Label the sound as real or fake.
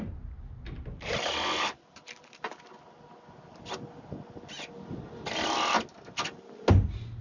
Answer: real